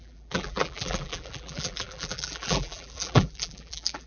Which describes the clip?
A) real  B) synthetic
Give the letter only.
B